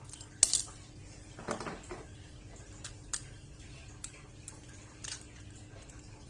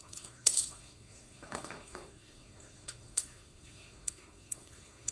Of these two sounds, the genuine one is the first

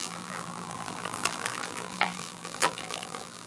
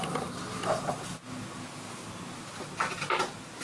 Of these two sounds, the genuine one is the second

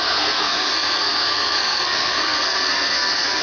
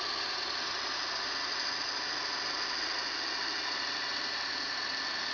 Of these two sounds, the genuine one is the second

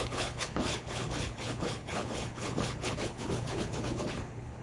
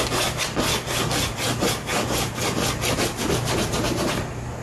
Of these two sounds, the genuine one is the second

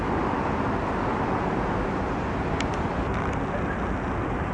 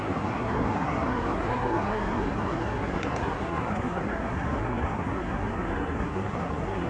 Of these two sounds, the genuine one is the first